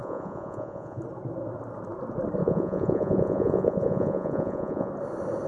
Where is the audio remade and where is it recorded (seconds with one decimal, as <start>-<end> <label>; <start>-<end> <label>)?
0.0-1.0 remade; 1.0-2.4 recorded; 2.4-4.9 remade; 4.9-5.5 recorded